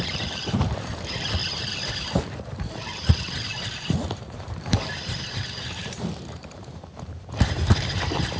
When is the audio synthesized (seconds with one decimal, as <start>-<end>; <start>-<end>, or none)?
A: 0.0-1.4; 2.2-8.4